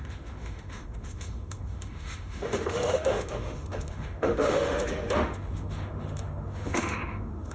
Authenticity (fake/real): fake